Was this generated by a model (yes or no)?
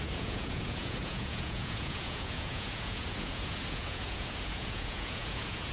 yes